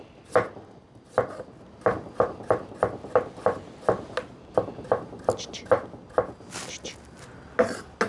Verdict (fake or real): real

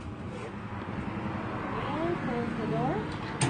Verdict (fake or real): real